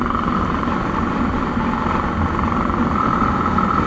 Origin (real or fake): real